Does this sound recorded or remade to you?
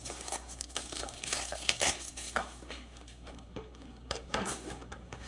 remade